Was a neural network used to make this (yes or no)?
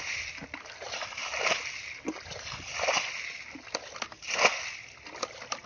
no